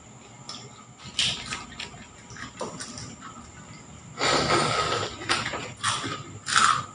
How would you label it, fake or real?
real